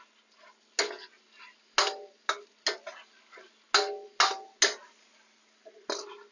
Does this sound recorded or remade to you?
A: recorded